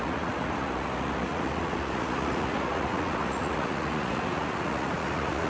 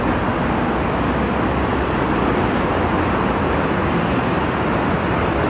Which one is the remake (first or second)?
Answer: first